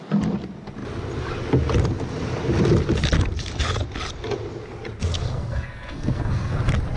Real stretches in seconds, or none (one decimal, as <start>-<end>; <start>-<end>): 0.0-5.0; 6.6-7.0